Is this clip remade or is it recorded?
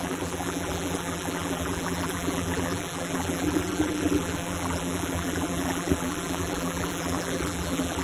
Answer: remade